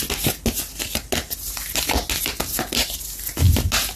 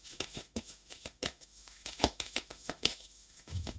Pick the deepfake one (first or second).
second